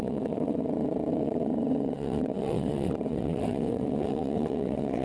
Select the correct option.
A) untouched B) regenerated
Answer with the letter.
B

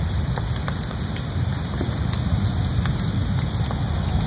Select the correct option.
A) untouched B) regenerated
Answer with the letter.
A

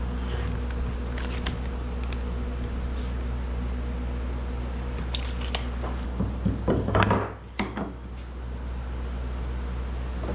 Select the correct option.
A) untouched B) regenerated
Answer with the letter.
A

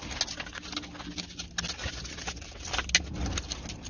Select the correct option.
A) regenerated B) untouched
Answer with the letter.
B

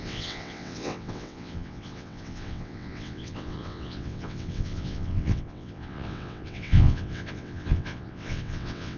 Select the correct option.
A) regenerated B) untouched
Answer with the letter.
A